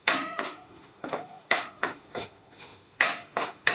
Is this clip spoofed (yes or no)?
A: yes